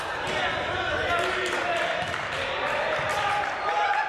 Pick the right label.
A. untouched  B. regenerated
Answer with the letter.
A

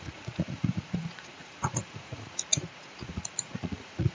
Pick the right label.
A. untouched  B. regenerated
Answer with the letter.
B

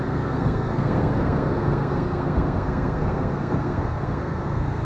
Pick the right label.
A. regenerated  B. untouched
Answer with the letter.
A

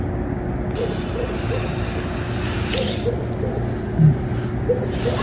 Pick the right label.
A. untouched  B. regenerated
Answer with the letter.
A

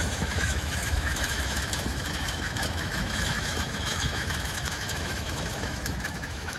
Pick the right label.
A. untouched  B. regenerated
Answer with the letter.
B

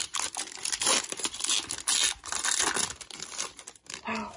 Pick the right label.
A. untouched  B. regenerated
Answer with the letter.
A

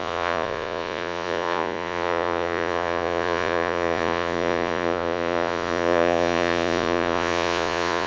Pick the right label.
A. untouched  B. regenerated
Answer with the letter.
B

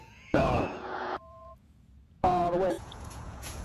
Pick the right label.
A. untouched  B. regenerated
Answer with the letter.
B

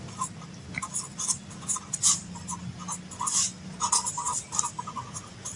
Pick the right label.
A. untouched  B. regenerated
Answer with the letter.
A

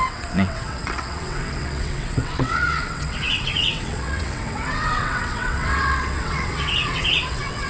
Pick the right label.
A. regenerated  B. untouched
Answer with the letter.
A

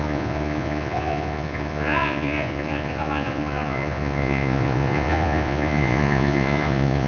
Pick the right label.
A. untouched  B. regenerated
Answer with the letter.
B